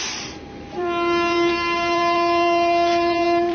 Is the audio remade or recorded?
remade